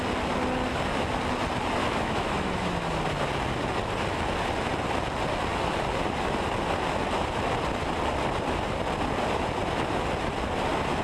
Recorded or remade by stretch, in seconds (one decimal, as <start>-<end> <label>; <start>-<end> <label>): 0.0-1.8 recorded; 1.8-3.0 remade; 3.0-11.0 recorded